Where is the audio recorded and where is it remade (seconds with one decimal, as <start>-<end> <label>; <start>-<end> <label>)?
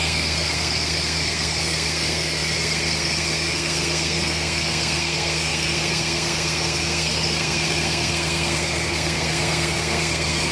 0.0-10.5 remade